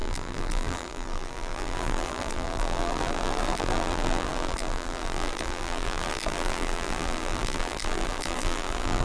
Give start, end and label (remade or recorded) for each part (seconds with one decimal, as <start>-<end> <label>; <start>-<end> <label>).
0.0-9.0 remade